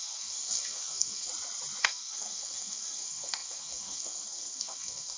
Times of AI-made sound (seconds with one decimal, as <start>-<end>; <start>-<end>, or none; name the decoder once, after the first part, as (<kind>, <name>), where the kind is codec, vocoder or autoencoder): 0.0-1.3 (codec, SNAC); 1.8-5.2

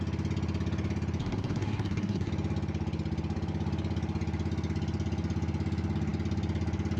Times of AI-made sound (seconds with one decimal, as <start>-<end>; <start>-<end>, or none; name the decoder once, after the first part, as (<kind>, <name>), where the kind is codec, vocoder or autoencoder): 1.2-2.3 (codec, SNAC)

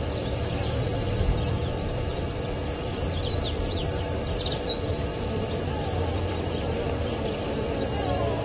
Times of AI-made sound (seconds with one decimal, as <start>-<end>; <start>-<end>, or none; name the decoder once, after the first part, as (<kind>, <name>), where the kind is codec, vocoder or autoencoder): 0.0-8.4 (vocoder, BigVGAN v2)

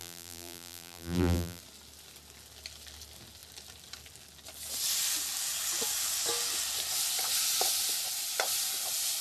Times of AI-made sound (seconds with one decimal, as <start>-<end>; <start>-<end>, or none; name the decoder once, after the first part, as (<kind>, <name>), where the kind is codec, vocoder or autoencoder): 0.0-1.6 (vocoder, BigVGAN v2)